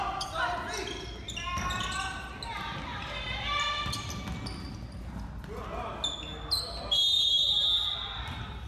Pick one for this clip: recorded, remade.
recorded